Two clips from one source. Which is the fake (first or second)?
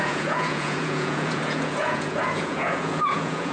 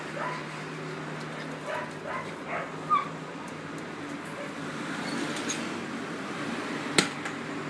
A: first